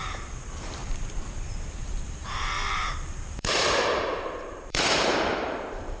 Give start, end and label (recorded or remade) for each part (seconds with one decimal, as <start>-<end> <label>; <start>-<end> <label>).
0.0-0.8 remade; 0.8-1.8 recorded; 1.8-6.0 remade